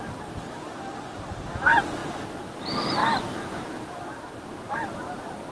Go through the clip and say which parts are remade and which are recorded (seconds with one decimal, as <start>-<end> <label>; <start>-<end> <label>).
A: 0.0-5.5 recorded